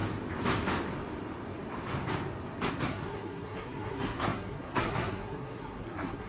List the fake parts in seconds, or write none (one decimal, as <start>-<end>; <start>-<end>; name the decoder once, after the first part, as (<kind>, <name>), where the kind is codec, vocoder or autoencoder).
2.7-6.3 (codec, SNAC)